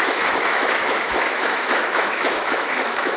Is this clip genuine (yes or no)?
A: no